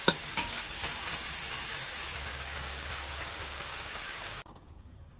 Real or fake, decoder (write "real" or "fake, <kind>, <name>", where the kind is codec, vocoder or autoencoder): fake, codec, DAC